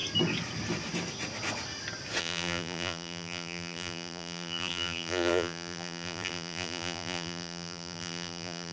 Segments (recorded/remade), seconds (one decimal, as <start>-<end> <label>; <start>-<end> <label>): 0.0-2.2 recorded; 2.2-8.7 remade